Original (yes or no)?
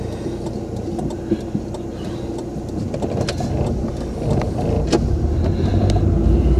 yes